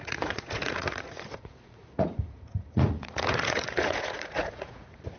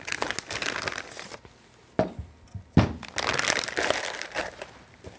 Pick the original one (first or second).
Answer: second